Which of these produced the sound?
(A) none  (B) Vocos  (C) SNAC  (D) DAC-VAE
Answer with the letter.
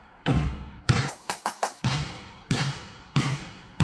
C